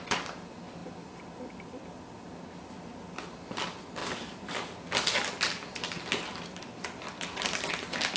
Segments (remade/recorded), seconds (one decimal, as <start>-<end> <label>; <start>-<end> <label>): 0.0-8.2 recorded